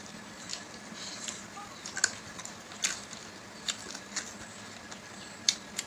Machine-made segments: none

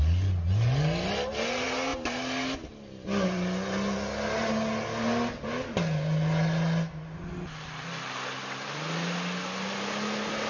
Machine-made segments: none

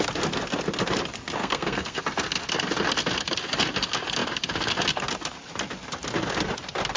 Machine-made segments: 1.4-2.0 (codec, SNAC)

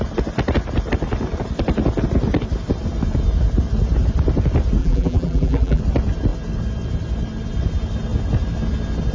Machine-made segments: 4.8-5.8 (vocoder, BigVGAN v2)